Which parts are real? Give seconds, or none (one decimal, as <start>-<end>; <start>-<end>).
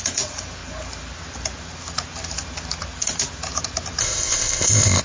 0.0-4.0